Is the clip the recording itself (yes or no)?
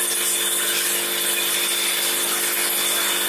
yes